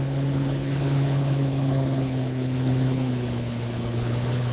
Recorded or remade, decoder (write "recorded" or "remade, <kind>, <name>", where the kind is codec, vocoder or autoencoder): remade, codec, HILCodec